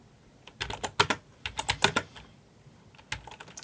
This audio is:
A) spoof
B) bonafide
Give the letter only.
B